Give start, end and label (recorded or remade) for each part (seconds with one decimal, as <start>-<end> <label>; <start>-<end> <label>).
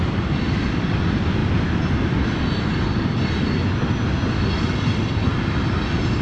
0.0-6.2 recorded